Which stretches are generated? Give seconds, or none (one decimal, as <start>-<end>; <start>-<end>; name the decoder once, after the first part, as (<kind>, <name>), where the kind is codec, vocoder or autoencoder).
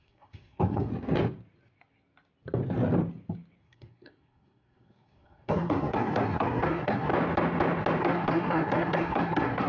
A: 0.0-0.9 (codec, SNAC); 3.6-7.1; 8.0-9.7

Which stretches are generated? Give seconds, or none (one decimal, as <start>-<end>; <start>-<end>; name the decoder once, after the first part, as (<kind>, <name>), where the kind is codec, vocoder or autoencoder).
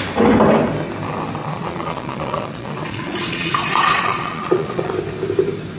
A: 1.4-4.9 (vocoder, Vocos)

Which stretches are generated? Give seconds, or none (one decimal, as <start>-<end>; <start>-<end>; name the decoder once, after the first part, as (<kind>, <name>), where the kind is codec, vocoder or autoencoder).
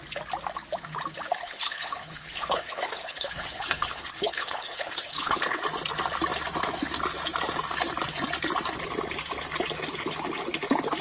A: 1.4-5.6 (codec, HILCodec)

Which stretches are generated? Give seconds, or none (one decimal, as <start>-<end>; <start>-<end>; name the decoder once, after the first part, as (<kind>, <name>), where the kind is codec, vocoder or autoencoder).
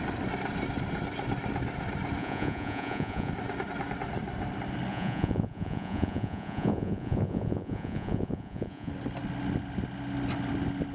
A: 2.2-3.3 (vocoder, Vocos); 4.9-8.9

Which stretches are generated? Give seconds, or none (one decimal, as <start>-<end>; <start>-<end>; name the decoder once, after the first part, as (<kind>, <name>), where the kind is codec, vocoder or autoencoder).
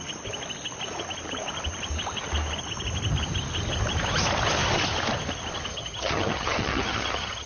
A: 5.7-7.5 (vocoder, HiFi-GAN)